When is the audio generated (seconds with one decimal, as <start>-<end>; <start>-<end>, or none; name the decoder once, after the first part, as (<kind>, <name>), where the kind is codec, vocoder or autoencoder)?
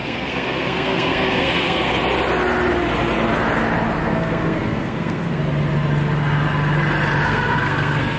0.0-1.9 (codec, SNAC); 4.0-5.4; 7.2-8.2